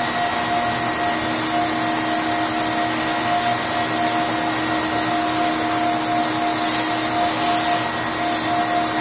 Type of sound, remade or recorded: recorded